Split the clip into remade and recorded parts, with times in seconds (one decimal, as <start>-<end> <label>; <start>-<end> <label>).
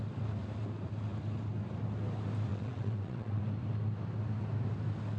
0.0-2.5 recorded; 2.5-3.4 remade; 3.4-5.2 recorded